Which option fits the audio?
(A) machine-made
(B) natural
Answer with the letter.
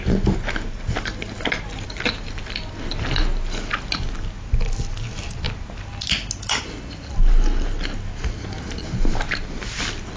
B